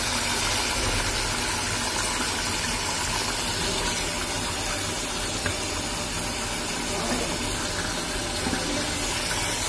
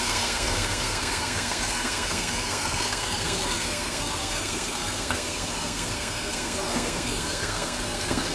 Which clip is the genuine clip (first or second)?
first